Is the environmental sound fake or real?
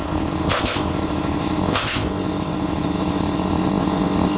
fake